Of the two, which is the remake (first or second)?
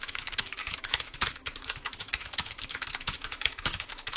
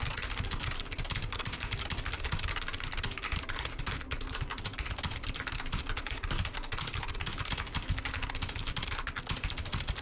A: first